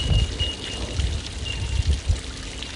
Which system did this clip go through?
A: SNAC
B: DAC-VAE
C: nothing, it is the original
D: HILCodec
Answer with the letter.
C